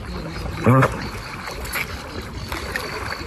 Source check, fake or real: real